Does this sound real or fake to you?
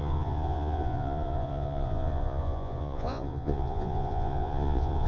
fake